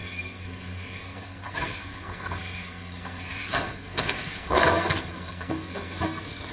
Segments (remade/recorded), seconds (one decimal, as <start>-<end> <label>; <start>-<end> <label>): 0.0-6.5 remade